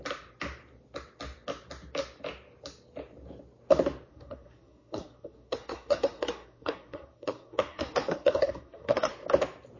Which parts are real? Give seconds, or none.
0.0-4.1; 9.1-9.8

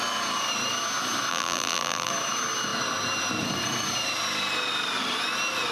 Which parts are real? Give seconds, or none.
0.0-1.3; 2.1-5.7

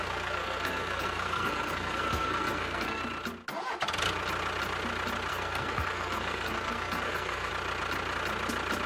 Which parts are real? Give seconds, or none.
3.0-5.3; 7.5-8.9

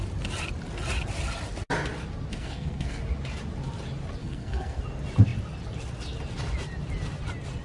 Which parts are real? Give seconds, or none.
0.0-2.3; 3.0-4.2; 4.8-7.6

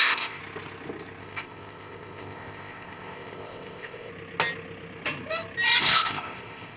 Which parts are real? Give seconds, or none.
0.4-1.2; 4.1-5.8

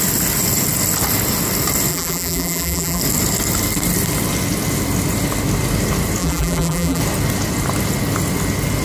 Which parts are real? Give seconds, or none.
0.0-1.9; 3.0-6.2; 7.0-8.8

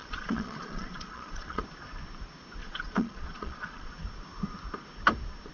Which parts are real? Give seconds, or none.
1.6-2.6; 3.9-5.5